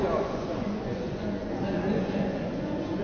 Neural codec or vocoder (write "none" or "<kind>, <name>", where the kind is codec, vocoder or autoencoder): vocoder, Vocos